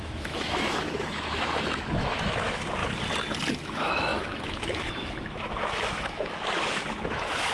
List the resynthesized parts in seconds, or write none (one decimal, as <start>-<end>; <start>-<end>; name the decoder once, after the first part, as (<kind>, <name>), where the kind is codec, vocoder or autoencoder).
0.0-2.8 (autoencoder, DAC-VAE); 3.5-7.5